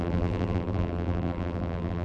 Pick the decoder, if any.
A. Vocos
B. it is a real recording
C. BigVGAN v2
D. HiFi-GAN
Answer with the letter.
C